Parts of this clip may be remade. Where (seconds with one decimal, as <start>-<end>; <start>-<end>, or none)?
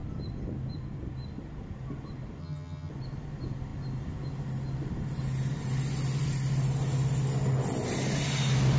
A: 2.4-2.9